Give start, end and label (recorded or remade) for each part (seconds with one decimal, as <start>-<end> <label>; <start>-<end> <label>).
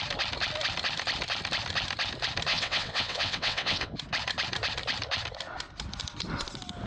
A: 0.0-2.5 recorded; 2.5-3.9 remade; 3.9-6.9 recorded